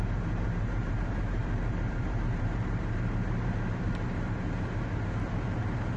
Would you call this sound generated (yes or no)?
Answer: yes